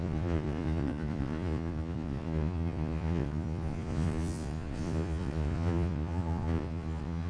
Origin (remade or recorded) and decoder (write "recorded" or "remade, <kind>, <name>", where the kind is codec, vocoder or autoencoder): remade, vocoder, Vocos